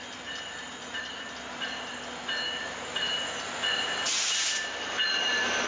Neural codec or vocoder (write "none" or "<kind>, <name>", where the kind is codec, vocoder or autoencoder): none